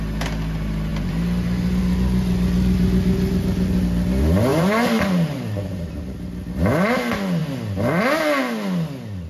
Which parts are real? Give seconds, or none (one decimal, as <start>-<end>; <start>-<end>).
0.0-4.5; 5.9-9.3